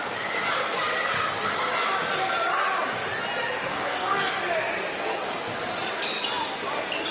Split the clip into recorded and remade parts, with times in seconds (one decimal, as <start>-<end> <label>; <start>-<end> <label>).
0.0-3.7 recorded; 3.7-4.3 remade; 4.3-7.1 recorded